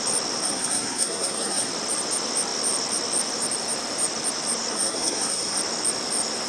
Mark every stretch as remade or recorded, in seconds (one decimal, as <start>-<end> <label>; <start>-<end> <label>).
0.0-0.4 recorded; 0.4-1.7 remade; 1.7-4.7 recorded; 4.7-5.6 remade; 5.6-6.5 recorded